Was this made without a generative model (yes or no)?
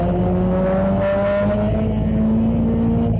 yes